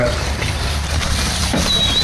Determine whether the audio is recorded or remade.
remade